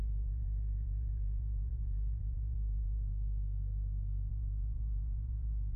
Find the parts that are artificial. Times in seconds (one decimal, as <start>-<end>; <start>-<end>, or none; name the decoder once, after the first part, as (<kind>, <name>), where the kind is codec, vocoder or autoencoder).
0.0-3.1 (vocoder, Vocos); 4.3-5.8